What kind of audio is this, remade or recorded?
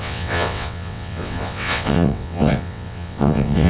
remade